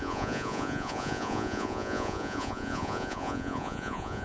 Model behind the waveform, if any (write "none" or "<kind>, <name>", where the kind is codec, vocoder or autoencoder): vocoder, Vocos